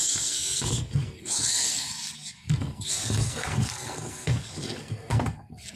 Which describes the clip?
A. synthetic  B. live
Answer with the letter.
A